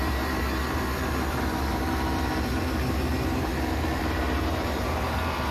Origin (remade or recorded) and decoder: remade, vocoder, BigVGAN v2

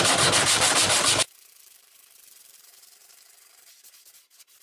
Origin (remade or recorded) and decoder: remade, vocoder, BigVGAN v2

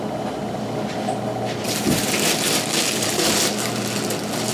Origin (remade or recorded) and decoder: remade, vocoder, BigVGAN v2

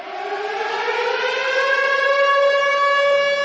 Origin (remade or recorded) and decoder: recorded